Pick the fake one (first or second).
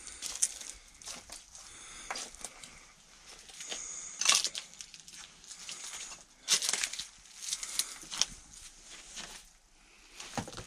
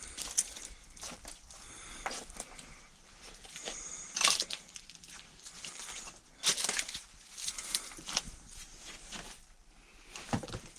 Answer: second